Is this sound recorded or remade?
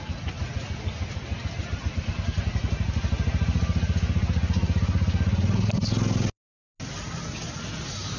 recorded